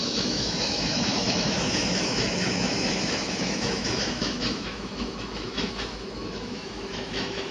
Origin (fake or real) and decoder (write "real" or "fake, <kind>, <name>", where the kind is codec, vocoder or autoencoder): fake, autoencoder, DAC-VAE